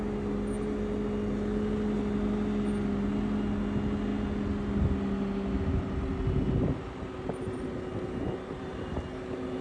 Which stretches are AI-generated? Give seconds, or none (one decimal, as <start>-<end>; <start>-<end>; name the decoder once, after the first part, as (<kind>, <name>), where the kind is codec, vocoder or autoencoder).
none